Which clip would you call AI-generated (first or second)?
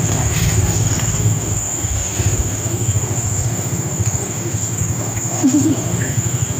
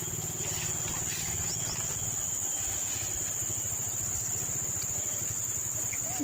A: first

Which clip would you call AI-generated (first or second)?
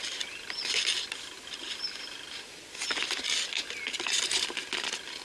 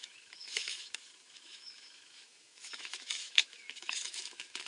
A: second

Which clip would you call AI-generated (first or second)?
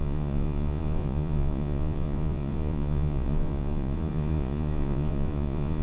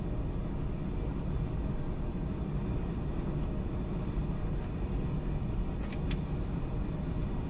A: first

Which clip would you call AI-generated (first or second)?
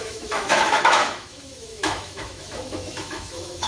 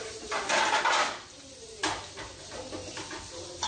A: first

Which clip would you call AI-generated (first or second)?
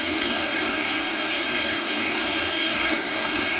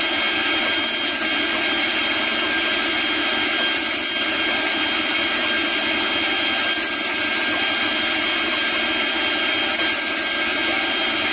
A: first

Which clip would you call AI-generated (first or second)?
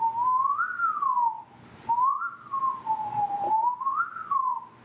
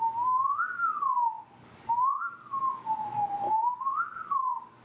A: second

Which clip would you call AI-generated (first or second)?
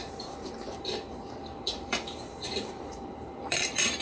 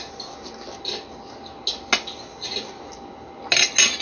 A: first